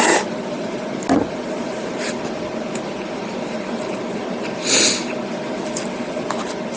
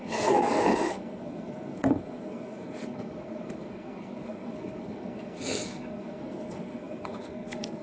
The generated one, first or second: second